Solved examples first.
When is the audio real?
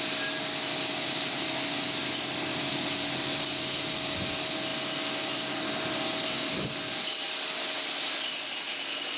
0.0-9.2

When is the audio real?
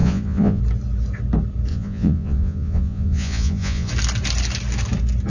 0.6-1.7; 3.9-5.3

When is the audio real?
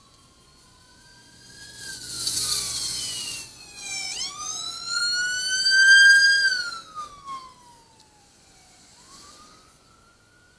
5.0-8.2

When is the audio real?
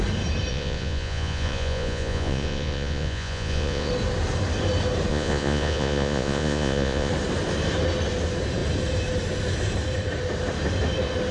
0.0-0.5; 3.9-5.1; 7.1-11.3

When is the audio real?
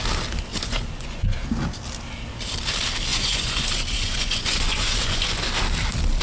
0.0-0.5; 1.4-3.1; 5.5-6.2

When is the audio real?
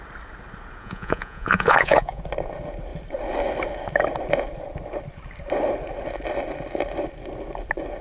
0.0-0.8; 2.2-8.0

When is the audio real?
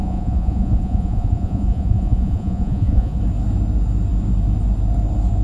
3.2-5.4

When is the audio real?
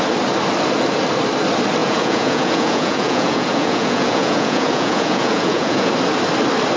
0.0-1.8; 5.9-6.8